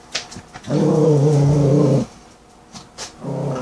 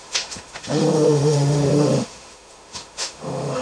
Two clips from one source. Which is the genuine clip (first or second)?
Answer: first